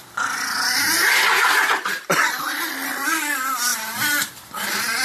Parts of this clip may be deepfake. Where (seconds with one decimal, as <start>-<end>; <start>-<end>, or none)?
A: 1.6-2.2; 3.7-4.3